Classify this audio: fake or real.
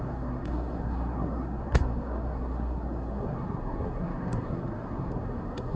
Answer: fake